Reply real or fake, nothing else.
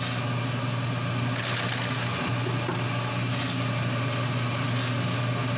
real